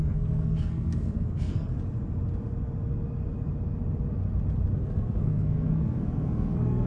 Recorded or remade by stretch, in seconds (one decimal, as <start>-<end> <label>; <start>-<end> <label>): 0.0-1.7 remade; 1.7-4.8 recorded; 4.8-6.9 remade